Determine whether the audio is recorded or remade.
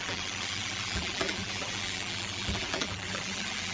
remade